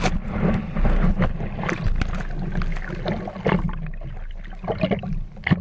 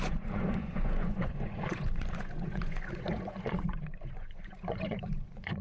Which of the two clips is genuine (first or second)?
first